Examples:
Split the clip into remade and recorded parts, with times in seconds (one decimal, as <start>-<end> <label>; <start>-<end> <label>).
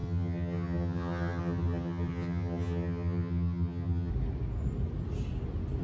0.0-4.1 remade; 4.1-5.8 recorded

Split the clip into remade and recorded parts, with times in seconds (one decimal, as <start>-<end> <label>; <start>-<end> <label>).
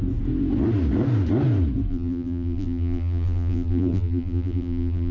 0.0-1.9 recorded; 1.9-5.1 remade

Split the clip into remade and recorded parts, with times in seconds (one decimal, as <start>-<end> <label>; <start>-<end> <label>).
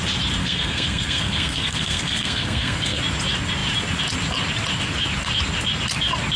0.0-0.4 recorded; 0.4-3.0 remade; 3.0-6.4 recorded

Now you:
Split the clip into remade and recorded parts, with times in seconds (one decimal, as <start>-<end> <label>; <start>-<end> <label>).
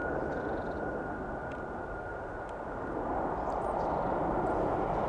0.0-5.1 recorded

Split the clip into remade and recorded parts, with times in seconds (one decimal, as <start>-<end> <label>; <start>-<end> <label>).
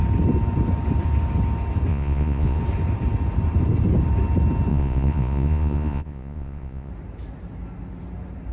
0.0-1.9 recorded; 1.9-2.6 remade; 2.6-4.7 recorded; 4.7-6.9 remade; 6.9-8.5 recorded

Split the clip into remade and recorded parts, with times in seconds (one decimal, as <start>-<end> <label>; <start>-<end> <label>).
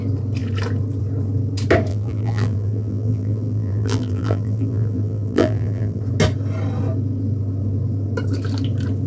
0.0-1.9 recorded; 1.9-6.0 remade; 6.0-9.1 recorded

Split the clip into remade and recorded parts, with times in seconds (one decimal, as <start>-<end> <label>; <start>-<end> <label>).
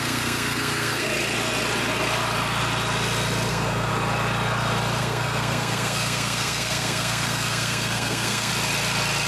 0.0-1.1 remade; 1.1-3.5 recorded; 3.5-3.9 remade; 3.9-5.0 recorded; 5.0-8.5 remade; 8.5-9.3 recorded